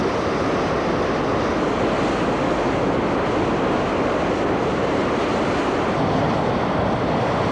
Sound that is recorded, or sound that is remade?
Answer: recorded